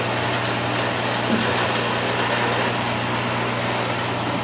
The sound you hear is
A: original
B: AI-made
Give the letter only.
A